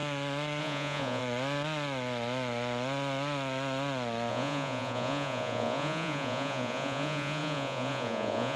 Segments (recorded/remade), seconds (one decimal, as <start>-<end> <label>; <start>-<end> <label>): 0.0-0.6 recorded; 0.6-1.2 remade; 1.2-4.3 recorded; 4.3-8.6 remade